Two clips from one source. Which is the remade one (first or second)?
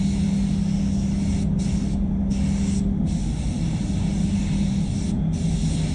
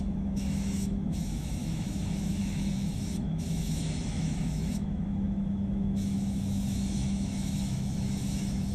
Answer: second